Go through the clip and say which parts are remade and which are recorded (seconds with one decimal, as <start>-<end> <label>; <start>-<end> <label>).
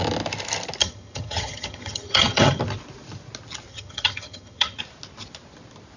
0.0-0.8 recorded; 0.8-2.6 remade; 2.6-3.7 recorded; 3.7-4.8 remade; 4.8-6.0 recorded